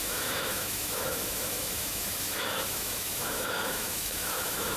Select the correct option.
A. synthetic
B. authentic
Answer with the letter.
A